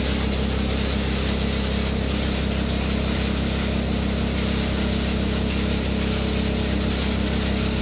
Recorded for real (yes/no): yes